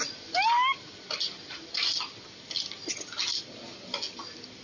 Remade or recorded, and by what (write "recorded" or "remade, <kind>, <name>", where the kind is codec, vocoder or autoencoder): recorded